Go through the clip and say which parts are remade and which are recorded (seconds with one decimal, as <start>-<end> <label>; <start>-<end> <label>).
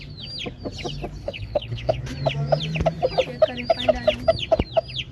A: 0.0-1.2 recorded; 1.2-2.0 remade; 2.0-5.1 recorded